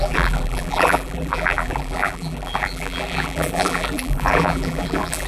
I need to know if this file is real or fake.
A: fake